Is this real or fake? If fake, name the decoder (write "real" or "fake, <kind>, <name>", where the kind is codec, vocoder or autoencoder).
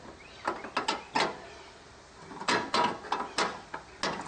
real